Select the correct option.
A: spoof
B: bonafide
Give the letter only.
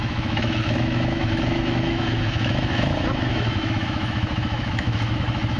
A